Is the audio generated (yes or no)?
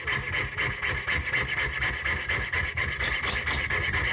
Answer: no